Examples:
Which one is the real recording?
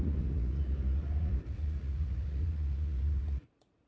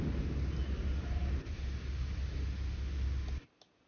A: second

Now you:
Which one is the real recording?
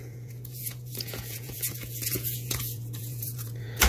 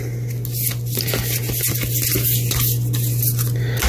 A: second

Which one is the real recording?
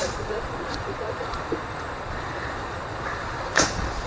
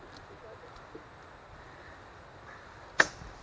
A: second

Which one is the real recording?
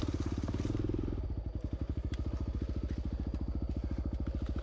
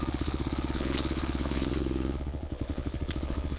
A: first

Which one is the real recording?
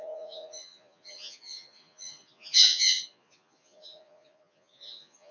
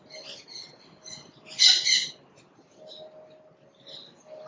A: second